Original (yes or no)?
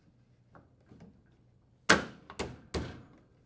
yes